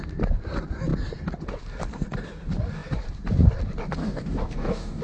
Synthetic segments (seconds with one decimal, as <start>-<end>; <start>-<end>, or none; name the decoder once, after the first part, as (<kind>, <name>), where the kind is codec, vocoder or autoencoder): 4.0-5.0 (codec, DAC)